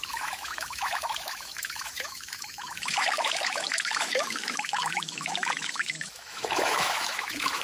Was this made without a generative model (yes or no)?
no